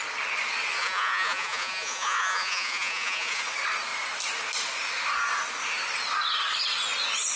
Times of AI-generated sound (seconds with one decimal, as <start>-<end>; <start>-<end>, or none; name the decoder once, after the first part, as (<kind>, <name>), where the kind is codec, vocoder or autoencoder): 0.8-3.4 (vocoder, Vocos)